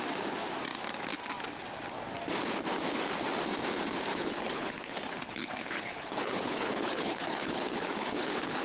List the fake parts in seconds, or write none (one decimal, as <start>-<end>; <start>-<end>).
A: 4.1-8.6